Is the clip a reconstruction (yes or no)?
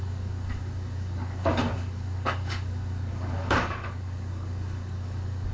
yes